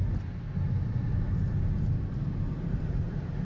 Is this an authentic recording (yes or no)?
yes